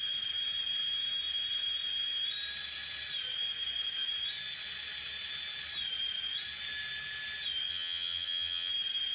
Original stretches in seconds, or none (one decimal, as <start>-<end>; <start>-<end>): 0.0-7.7; 8.7-9.1